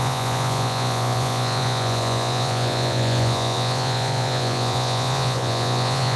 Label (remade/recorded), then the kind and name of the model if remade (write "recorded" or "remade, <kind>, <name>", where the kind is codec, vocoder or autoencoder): remade, vocoder, Vocos